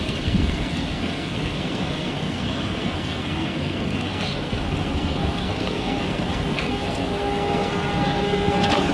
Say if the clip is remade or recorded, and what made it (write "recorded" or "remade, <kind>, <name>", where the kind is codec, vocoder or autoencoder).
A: remade, codec, SNAC